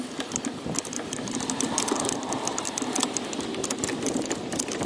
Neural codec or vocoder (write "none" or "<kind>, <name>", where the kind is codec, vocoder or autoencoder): none